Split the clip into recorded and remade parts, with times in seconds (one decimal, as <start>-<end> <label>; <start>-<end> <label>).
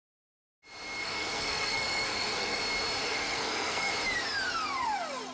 0.0-1.0 recorded; 1.0-2.6 remade; 2.6-3.0 recorded; 3.0-3.9 remade; 3.9-5.3 recorded